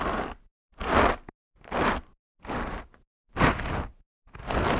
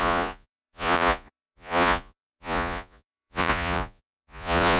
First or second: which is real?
first